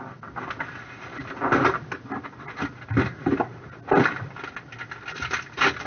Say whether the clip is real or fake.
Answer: real